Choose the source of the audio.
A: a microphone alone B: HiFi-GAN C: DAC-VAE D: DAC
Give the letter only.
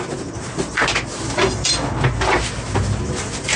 A